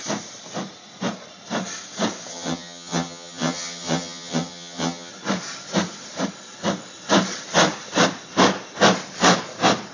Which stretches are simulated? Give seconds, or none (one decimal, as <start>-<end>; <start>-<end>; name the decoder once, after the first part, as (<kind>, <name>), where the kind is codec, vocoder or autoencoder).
2.3-5.1 (vocoder, HiFi-GAN)